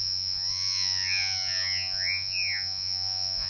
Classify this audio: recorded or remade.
remade